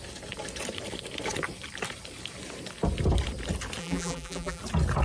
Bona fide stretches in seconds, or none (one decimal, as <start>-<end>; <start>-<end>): 0.0-3.8; 4.6-5.0